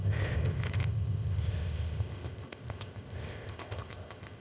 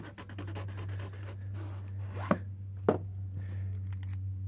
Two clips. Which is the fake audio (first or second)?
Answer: first